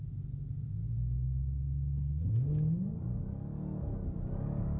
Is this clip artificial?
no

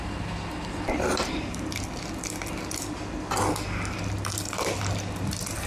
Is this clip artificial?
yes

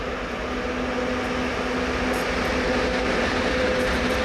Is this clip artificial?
no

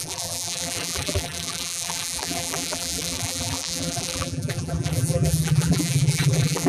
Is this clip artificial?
yes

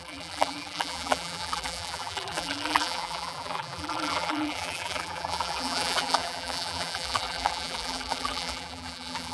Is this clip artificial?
yes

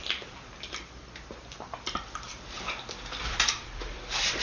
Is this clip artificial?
yes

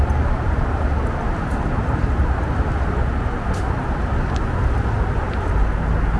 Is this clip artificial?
no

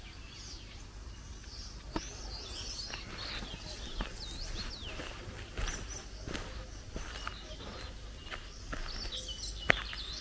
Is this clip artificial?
no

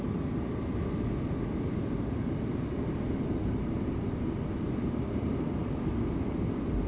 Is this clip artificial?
no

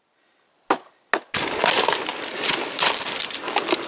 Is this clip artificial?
no